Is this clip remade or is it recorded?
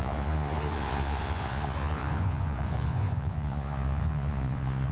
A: remade